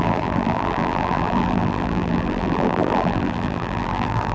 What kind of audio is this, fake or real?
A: fake